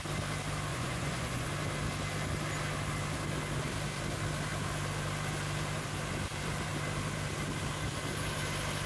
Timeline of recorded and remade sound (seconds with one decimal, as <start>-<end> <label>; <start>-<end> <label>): 0.0-0.7 recorded; 0.7-1.5 remade; 1.5-8.9 recorded